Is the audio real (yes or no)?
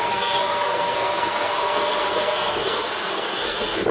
no